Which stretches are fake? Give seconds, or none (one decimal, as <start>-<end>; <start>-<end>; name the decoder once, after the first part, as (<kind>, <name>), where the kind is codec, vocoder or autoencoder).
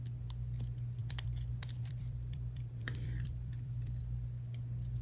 1.0-4.0 (vocoder, BigVGAN v2)